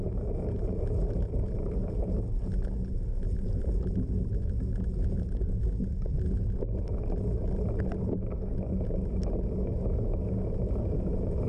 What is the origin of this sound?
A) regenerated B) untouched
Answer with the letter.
B